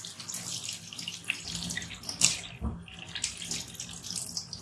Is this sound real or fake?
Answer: real